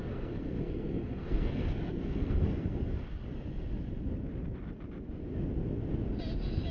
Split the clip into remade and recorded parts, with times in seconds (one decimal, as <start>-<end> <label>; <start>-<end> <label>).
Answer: 0.0-2.8 remade; 2.8-6.7 recorded